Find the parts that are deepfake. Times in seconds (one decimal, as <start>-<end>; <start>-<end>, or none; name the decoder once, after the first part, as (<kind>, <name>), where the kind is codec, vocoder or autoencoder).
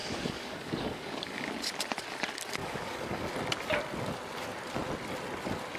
0.0-1.5 (codec, DAC); 2.6-3.3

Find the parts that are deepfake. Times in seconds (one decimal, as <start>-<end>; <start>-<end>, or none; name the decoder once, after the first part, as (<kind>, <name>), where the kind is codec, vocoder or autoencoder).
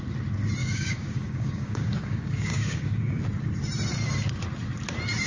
0.6-3.2 (codec, DAC)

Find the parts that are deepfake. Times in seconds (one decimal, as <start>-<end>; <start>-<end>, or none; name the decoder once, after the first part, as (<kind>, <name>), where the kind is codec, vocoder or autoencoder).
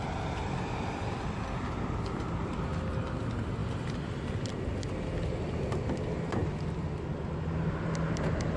none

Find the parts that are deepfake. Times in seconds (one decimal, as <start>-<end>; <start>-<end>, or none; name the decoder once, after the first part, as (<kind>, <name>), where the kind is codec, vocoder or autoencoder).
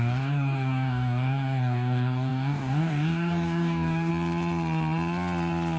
0.0-4.1 (codec, DAC)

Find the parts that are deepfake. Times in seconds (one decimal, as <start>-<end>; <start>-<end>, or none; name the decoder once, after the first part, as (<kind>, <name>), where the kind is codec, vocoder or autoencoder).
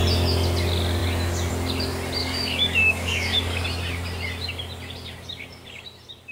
2.2-3.6 (codec, DAC)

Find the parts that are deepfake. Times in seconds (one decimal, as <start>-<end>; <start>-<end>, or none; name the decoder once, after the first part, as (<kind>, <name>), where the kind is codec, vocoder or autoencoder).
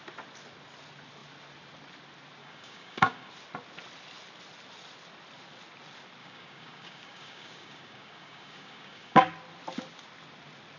2.4-3.3 (codec, DAC); 6.2-9.3